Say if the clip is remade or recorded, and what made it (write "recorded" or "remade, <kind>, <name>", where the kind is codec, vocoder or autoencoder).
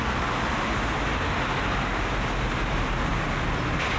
recorded